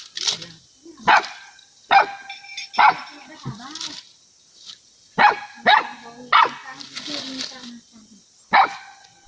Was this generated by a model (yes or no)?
no